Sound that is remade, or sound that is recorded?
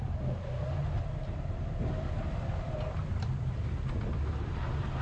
recorded